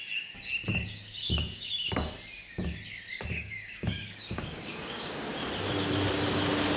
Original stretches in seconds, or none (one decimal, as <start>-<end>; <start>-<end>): 0.0-0.7; 1.9-3.1; 5.3-6.8